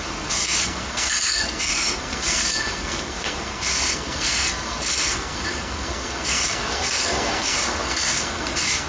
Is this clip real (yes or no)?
no